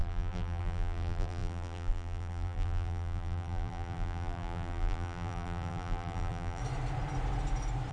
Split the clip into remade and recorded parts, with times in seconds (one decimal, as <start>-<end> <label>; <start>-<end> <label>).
0.0-6.6 remade; 6.6-7.9 recorded